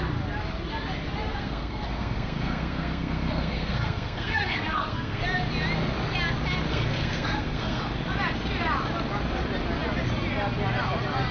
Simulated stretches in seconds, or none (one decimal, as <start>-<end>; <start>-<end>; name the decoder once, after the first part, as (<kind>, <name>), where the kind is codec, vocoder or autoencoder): 1.3-5.2 (codec, SNAC); 6.7-7.8